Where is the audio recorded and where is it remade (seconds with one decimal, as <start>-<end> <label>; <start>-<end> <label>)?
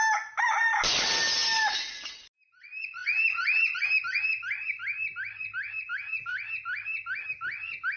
0.0-8.0 recorded